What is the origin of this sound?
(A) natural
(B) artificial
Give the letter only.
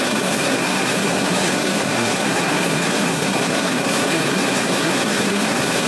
B